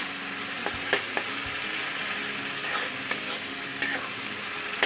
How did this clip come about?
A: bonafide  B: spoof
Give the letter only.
A